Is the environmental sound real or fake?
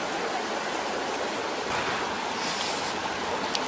real